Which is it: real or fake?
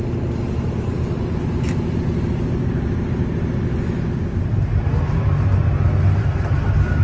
real